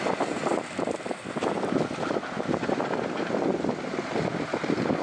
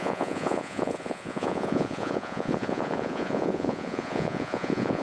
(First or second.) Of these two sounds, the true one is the first